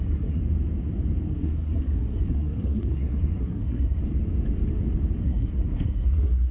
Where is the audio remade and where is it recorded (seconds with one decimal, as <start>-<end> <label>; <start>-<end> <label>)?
0.0-0.4 remade; 0.4-1.3 recorded; 1.3-4.0 remade; 4.0-5.2 recorded; 5.2-6.5 remade

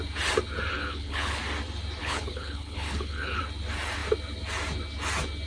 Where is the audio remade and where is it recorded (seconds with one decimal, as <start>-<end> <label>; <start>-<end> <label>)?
0.0-0.7 recorded; 0.7-1.4 remade; 1.4-2.0 recorded; 2.0-3.4 remade; 3.4-5.5 recorded

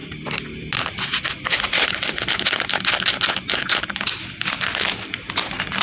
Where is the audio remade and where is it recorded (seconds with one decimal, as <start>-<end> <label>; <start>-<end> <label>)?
0.0-2.3 remade; 2.3-5.8 recorded

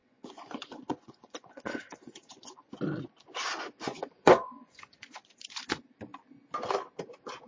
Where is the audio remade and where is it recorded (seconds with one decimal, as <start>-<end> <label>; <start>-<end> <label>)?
0.0-2.7 remade; 2.7-3.9 recorded; 3.9-5.6 remade; 5.6-7.5 recorded

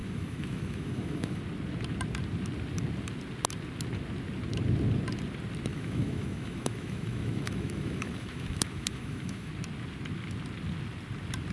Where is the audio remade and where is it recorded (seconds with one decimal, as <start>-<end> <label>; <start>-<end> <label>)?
0.0-1.4 remade; 1.4-5.7 recorded; 5.7-9.5 remade; 9.5-11.5 recorded

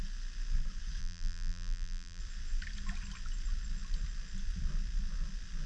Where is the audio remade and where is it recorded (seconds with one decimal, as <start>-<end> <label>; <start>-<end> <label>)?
0.0-1.0 recorded; 1.0-2.2 remade; 2.2-5.7 recorded